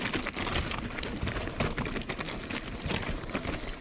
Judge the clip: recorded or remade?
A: recorded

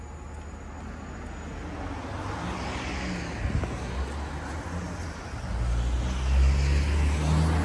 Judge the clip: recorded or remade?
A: recorded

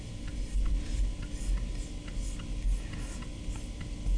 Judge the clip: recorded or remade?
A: recorded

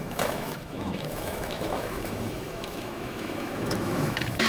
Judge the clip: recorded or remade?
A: remade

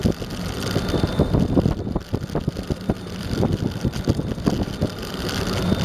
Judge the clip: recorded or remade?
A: recorded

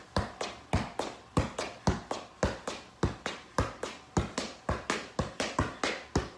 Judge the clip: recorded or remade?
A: recorded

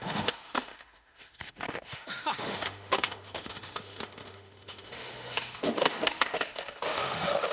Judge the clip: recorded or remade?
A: remade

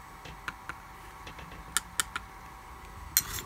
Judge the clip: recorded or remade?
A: recorded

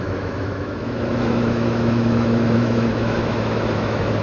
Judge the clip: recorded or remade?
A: remade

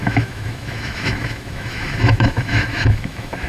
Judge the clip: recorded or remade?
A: remade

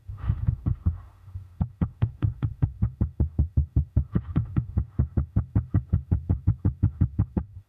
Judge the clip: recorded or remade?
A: remade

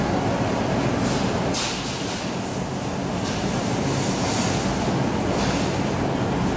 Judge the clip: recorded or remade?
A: recorded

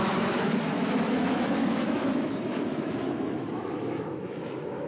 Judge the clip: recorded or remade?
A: remade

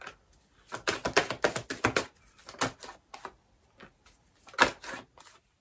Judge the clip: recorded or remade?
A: recorded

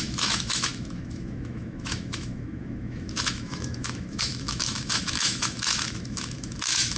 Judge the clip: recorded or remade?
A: remade